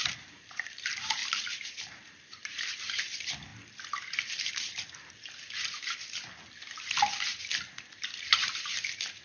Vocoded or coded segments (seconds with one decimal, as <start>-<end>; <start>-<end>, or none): 0.0-3.5; 8.2-9.2